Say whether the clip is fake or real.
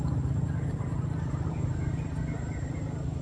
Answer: real